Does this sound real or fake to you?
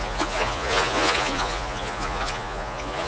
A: fake